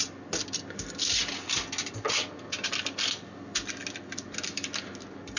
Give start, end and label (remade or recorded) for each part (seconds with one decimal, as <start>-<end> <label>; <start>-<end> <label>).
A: 0.0-5.4 recorded